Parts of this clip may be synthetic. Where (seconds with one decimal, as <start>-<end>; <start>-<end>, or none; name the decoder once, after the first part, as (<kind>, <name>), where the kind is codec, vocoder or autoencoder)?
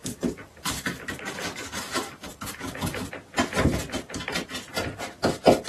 0.0-3.1 (codec, DAC)